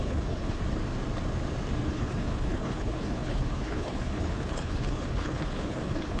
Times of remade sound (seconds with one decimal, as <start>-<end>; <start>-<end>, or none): 0.0-0.6; 1.9-6.2

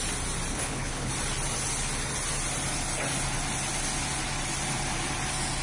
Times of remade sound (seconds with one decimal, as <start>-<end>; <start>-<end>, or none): 0.5-1.1

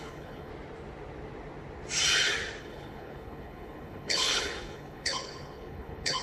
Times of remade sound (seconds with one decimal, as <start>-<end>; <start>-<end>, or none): 0.0-0.5; 2.6-6.2

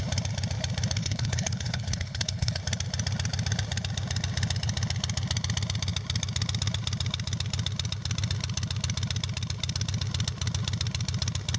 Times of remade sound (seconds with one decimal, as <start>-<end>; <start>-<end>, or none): 1.0-2.6